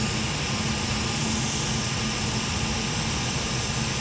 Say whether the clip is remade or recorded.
recorded